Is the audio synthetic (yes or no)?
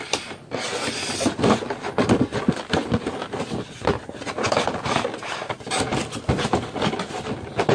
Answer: no